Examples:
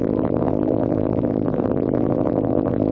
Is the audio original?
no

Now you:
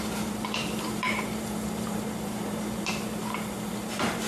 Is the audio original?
no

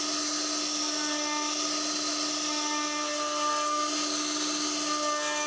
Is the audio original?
yes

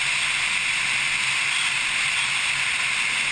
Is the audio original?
yes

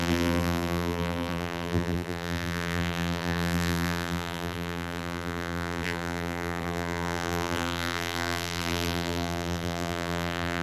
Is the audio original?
no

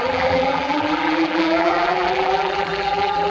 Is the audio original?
no